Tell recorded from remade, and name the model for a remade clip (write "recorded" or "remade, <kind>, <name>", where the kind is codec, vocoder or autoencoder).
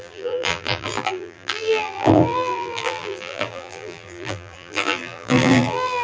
remade, vocoder, BigVGAN v2